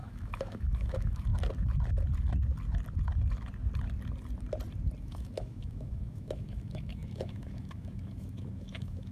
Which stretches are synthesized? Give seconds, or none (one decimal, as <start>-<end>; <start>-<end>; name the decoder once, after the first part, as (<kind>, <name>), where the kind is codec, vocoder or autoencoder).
0.0-1.3 (autoencoder, DAC-VAE); 5.0-9.1

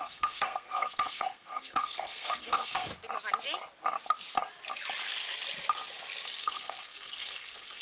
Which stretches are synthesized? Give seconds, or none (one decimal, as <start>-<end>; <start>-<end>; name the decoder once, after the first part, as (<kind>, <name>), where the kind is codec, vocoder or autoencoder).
0.0-2.9 (codec, SNAC); 6.4-7.8

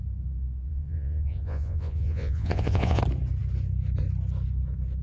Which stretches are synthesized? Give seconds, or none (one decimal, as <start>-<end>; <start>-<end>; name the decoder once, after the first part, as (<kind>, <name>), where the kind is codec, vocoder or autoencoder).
0.7-3.0 (vocoder, Vocos)